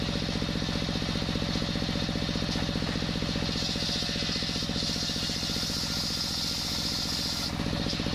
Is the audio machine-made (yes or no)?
no